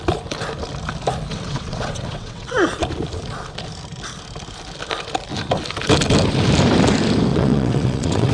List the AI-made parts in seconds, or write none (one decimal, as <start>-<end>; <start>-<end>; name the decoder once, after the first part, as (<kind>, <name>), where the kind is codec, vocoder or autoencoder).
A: 1.3-2.7 (vocoder, WaveNeXt); 7.3-8.3